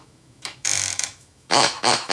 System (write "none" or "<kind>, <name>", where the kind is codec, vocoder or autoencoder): autoencoder, DAC-VAE